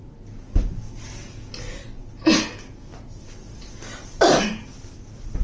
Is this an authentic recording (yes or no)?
yes